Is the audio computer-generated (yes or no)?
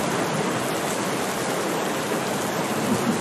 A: no